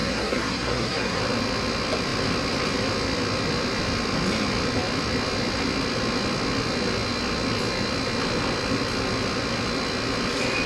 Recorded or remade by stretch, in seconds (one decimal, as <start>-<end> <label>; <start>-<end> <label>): 0.0-1.2 remade; 1.2-10.7 recorded